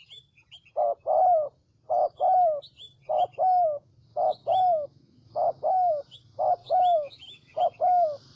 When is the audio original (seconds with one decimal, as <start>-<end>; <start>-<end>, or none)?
0.0-3.3; 3.9-4.4; 6.1-6.6; 7.6-8.4

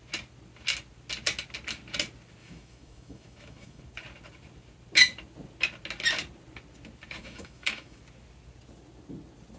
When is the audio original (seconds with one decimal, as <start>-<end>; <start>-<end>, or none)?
0.0-2.4; 3.8-7.2; 8.0-9.6

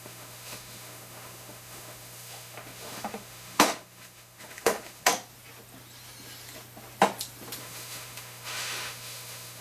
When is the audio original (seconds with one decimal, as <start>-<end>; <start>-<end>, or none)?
5.1-7.6

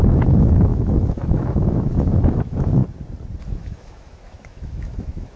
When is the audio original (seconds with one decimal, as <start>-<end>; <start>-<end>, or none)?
2.8-3.4

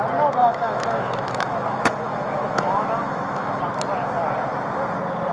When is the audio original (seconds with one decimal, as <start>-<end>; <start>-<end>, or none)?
0.0-0.4; 3.6-5.3

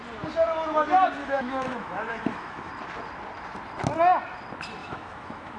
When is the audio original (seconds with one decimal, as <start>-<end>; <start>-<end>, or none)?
0.0-1.2; 2.7-4.8